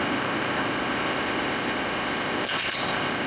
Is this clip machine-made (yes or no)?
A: yes